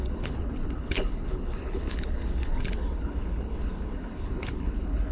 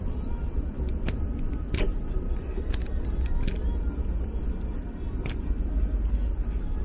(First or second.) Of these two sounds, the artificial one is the first